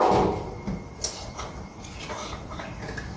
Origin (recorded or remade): recorded